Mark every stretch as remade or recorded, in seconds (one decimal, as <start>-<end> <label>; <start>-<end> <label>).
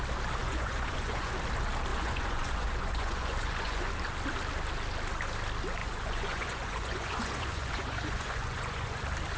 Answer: 0.0-0.4 recorded; 0.4-1.3 remade; 1.3-1.9 recorded; 1.9-3.9 remade; 3.9-5.8 recorded; 5.8-9.0 remade; 9.0-9.4 recorded